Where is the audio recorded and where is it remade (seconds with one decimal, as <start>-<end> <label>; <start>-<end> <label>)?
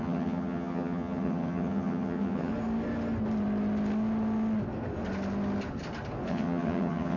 0.0-2.5 remade; 2.5-6.3 recorded; 6.3-7.2 remade